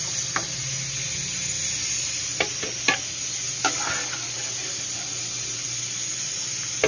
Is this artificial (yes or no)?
no